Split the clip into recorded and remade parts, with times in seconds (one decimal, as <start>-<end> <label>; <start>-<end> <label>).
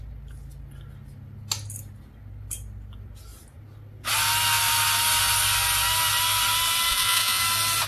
0.0-6.9 recorded; 6.9-7.4 remade; 7.4-7.9 recorded